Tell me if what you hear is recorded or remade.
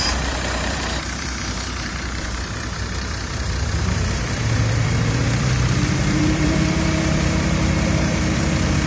remade